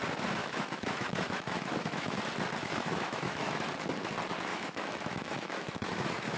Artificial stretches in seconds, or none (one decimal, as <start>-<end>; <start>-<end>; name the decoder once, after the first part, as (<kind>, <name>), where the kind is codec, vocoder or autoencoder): 0.4-2.2 (autoencoder, DAC-VAE); 2.6-3.7; 4.5-6.4